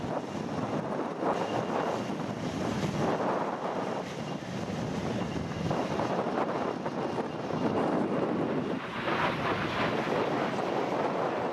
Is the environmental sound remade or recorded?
recorded